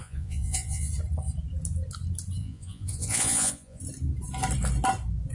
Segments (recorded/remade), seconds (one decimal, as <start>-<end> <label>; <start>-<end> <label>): 0.0-0.9 remade; 0.9-2.4 recorded; 2.4-3.8 remade; 3.8-5.3 recorded